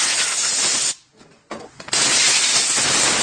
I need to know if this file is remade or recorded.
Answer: recorded